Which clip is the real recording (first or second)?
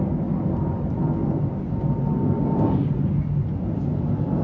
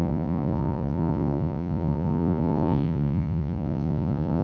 first